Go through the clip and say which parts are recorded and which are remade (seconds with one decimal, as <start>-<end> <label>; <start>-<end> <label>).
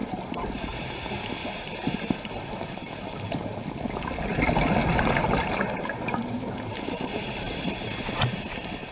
0.0-0.9 remade; 0.9-4.3 recorded; 4.3-8.2 remade; 8.2-8.9 recorded